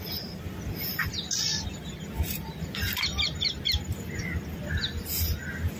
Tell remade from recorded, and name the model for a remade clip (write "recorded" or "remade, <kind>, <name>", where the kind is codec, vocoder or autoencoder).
remade, vocoder, BigVGAN v2